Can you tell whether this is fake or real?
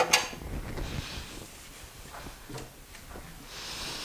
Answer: real